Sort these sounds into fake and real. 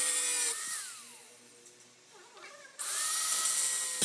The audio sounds real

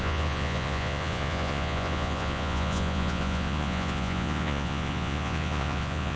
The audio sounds fake